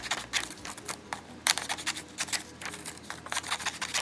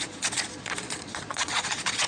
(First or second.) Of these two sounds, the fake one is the second